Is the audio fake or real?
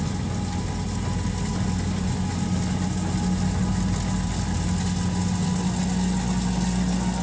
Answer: real